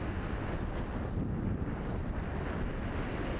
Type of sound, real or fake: real